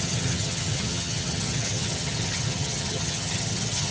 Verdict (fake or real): fake